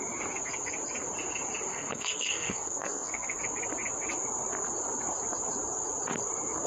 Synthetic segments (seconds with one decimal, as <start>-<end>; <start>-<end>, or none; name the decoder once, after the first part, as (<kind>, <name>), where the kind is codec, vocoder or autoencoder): 1.7-3.4 (codec, SNAC)